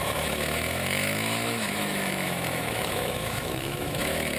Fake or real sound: fake